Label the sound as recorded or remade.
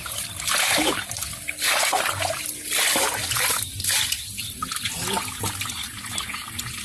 recorded